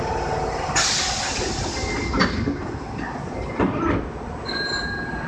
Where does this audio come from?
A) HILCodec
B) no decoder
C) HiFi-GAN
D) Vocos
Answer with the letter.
B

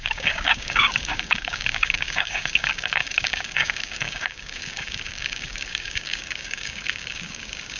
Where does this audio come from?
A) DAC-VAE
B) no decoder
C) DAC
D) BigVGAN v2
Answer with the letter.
C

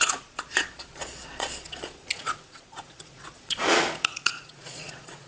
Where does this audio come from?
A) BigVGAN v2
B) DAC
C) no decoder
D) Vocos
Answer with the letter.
D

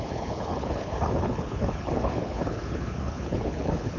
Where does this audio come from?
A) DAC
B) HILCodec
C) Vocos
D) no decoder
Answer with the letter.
B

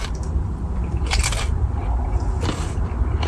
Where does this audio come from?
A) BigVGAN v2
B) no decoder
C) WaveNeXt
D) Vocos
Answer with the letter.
A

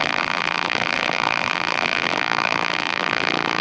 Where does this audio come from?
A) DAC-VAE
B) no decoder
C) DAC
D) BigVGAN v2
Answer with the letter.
D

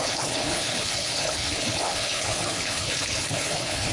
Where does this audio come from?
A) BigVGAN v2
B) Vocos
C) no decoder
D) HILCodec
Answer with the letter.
D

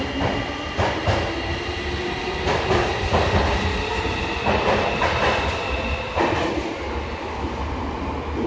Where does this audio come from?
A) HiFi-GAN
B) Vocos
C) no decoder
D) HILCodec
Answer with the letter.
C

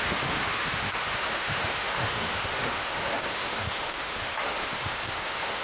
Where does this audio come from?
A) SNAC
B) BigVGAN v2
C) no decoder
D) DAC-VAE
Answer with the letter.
D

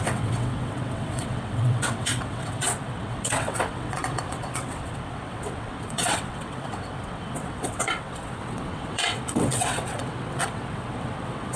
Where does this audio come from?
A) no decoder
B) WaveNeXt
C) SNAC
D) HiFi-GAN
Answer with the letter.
B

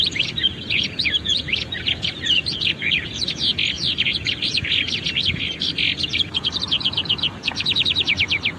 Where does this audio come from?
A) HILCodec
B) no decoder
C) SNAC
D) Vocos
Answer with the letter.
D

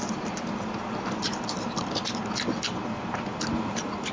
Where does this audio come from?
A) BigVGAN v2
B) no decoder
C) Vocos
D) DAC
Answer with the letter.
B